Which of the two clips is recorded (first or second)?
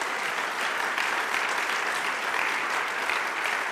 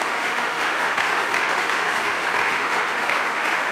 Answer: first